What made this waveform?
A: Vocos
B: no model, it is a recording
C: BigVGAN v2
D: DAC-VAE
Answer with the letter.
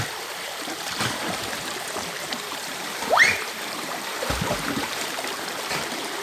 C